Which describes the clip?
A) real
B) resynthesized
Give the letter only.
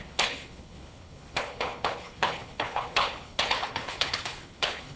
B